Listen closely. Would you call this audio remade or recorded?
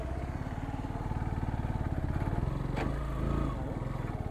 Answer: recorded